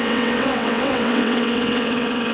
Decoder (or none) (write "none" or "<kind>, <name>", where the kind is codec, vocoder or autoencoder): vocoder, WaveNeXt